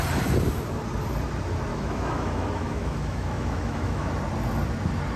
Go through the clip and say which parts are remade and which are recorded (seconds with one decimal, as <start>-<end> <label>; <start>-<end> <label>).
0.0-1.7 recorded; 1.7-4.1 remade; 4.1-5.2 recorded